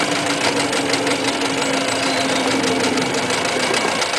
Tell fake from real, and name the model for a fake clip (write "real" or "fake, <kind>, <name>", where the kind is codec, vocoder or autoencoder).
real